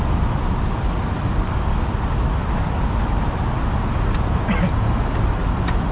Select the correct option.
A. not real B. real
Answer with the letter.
B